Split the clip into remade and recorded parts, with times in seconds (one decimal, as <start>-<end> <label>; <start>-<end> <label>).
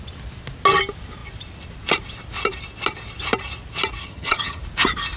0.0-4.0 recorded; 4.0-4.6 remade; 4.6-5.2 recorded